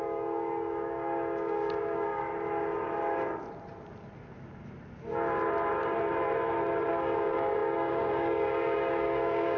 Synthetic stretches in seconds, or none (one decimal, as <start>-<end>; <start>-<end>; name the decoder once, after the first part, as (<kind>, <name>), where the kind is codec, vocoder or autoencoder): 0.0-2.2 (codec, DAC); 6.9-9.6